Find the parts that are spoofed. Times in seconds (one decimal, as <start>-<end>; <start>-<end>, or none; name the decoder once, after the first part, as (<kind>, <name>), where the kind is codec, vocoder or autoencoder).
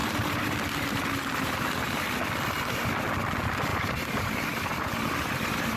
0.0-0.5 (vocoder, BigVGAN v2); 3.7-5.8